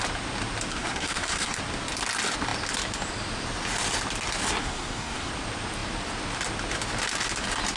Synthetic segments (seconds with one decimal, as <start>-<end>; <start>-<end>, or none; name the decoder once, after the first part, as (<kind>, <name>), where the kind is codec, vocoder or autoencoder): 0.7-1.6 (codec, SNAC); 4.6-5.3